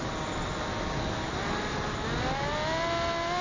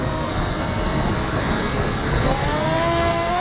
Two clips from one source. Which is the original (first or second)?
first